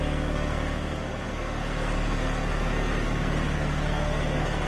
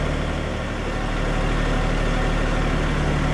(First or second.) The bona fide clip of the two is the second